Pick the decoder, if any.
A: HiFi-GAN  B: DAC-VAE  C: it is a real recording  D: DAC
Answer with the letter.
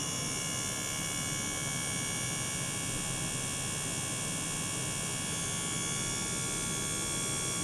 C